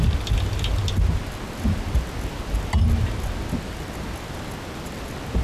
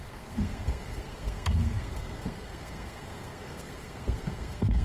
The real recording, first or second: first